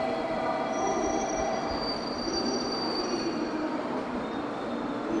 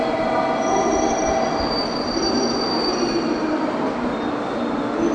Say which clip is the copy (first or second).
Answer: first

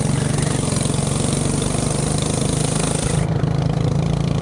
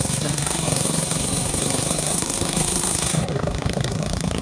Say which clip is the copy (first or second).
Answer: second